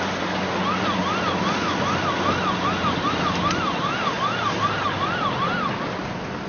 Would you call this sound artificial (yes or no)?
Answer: no